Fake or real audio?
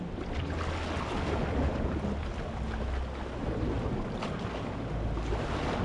real